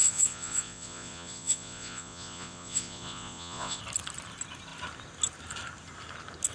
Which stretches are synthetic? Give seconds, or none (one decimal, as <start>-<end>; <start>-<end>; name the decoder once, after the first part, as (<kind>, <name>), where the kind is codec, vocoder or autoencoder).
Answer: 0.0-3.8 (vocoder, Vocos)